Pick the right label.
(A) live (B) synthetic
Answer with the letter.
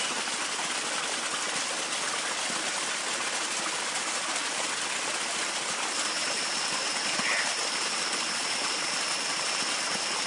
A